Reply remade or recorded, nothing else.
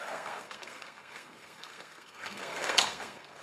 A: remade